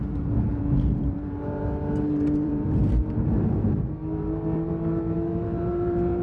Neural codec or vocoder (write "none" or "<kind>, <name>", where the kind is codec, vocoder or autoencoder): vocoder, BigVGAN v2